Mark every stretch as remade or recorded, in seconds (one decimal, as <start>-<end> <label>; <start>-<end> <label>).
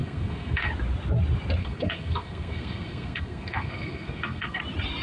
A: 0.0-0.7 remade; 0.7-1.6 recorded; 1.6-4.6 remade; 4.6-5.0 recorded